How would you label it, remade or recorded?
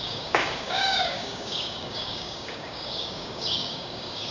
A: remade